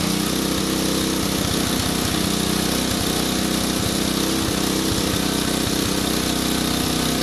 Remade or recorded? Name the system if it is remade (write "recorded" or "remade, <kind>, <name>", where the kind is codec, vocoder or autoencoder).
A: recorded